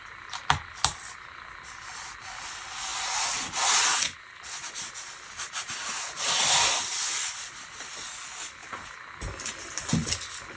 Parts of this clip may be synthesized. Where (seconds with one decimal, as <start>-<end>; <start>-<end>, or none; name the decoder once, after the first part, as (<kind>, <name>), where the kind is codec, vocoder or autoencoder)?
none